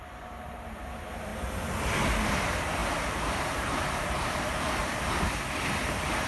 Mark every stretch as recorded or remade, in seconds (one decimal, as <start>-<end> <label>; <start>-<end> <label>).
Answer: 0.0-1.3 remade; 1.3-2.3 recorded; 2.3-4.8 remade; 4.8-6.3 recorded